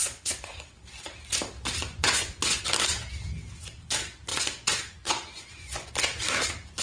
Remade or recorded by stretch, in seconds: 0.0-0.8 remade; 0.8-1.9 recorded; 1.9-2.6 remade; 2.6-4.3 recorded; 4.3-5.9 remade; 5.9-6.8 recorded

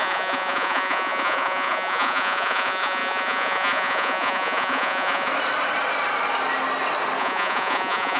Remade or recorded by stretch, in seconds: 0.0-5.3 remade; 5.3-7.2 recorded; 7.2-8.2 remade

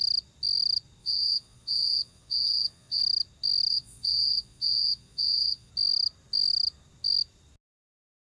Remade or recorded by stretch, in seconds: 0.0-1.0 recorded; 1.0-3.0 remade; 3.0-3.7 recorded; 3.7-5.7 remade; 5.7-8.3 recorded

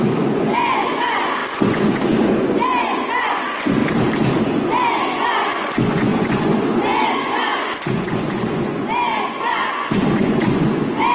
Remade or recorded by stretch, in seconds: 0.0-3.8 remade; 3.8-4.4 recorded; 4.4-11.1 remade

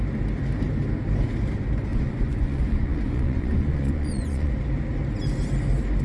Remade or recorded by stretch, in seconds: 0.0-1.9 recorded; 1.9-4.5 remade; 4.5-6.0 recorded

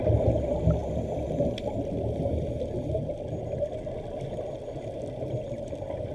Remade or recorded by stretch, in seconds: 0.0-6.1 recorded

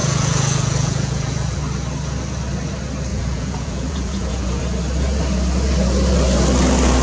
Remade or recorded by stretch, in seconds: 0.0-1.6 remade; 1.6-3.1 recorded; 3.1-4.6 remade; 4.6-7.0 recorded

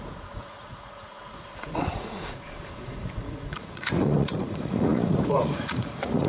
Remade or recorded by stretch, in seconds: 0.0-6.3 remade